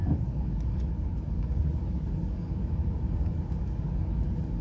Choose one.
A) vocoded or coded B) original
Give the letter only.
A